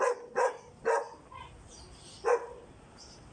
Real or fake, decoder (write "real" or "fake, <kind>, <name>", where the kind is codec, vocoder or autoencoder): real